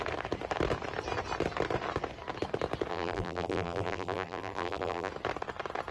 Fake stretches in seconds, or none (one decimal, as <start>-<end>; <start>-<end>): 2.9-5.1